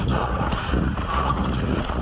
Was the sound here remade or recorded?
remade